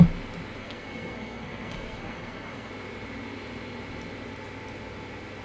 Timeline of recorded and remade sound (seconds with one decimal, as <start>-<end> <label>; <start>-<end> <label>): 0.0-0.6 recorded; 0.6-2.7 remade; 2.7-5.4 recorded